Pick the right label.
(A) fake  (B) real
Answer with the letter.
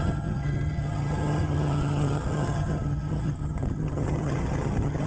A